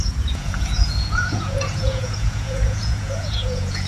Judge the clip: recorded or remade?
remade